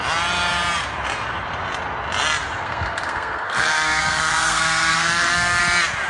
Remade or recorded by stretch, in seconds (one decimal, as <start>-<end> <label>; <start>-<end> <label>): 0.0-2.6 recorded; 2.6-5.6 remade; 5.6-6.1 recorded